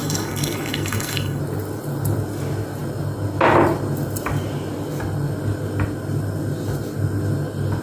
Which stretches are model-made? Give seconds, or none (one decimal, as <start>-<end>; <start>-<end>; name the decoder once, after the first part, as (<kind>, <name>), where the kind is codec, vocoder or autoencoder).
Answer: 0.0-1.4 (codec, SNAC)